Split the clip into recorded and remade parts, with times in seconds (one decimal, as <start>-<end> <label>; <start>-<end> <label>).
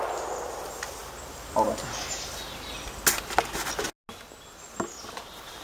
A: 0.0-5.6 recorded